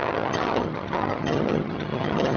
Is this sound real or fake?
fake